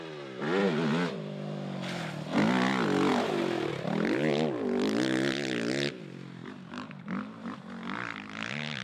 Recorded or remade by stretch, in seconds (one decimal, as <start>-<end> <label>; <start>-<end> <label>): 0.0-3.1 recorded; 3.1-3.7 remade; 3.7-6.4 recorded; 6.4-7.7 remade; 7.7-8.8 recorded